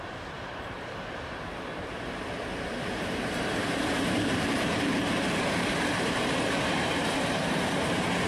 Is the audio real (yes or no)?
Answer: no